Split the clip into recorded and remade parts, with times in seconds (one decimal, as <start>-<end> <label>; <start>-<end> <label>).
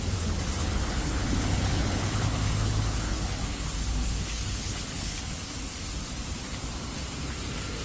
0.0-0.6 recorded; 0.6-5.2 remade; 5.2-7.8 recorded